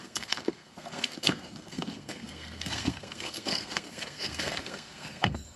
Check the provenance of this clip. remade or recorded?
remade